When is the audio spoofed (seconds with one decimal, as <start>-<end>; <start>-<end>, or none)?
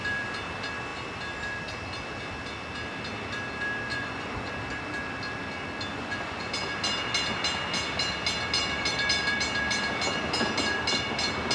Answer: 3.9-4.5; 5.9-6.5